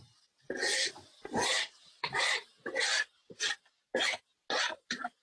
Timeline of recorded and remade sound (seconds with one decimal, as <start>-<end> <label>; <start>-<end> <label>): 0.0-1.5 recorded; 1.5-2.1 remade; 2.1-5.2 recorded